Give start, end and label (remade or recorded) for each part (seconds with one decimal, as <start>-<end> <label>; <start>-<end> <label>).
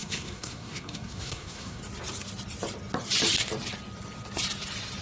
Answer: 0.0-1.8 remade; 1.8-5.0 recorded